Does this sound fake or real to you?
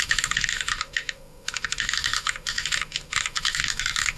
fake